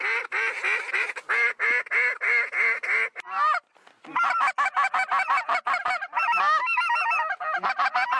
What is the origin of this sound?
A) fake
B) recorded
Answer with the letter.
B